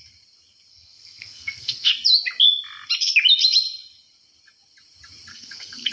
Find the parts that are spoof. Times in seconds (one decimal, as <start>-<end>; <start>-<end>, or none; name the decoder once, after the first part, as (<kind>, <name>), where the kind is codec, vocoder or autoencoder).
0.7-1.9 (codec, SNAC); 5.3-5.9